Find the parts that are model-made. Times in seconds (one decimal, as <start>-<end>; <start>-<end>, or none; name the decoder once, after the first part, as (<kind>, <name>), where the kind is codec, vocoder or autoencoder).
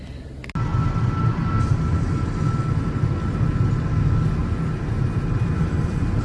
4.4-5.6 (vocoder, BigVGAN v2)